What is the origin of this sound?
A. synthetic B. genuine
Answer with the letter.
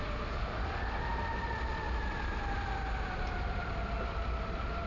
B